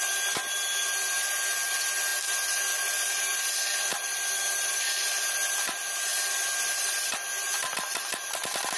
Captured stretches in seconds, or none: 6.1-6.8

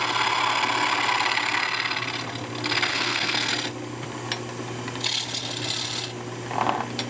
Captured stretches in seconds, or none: 0.0-2.9; 3.5-7.1

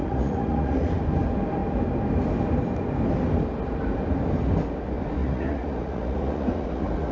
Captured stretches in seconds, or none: 0.9-5.2

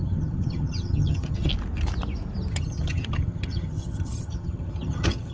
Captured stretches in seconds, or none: 1.5-2.5

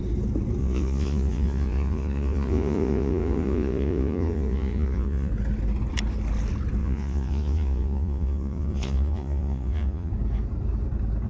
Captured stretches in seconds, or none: 0.0-0.6; 5.3-6.8; 10.1-11.3

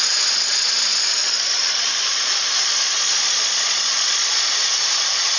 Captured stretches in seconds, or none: 0.0-1.2; 4.4-5.4

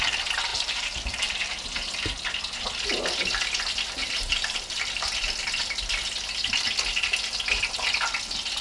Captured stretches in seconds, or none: 0.0-0.5; 1.4-4.0; 5.1-8.6